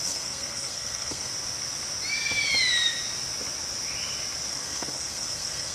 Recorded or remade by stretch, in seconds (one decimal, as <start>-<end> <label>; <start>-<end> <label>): 0.0-1.3 remade; 1.3-4.5 recorded; 4.5-5.7 remade